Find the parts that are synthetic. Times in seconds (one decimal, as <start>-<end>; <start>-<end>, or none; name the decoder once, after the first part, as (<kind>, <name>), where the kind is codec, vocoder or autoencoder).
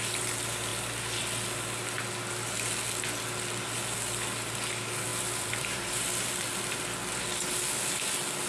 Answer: 5.1-7.2 (vocoder, BigVGAN v2)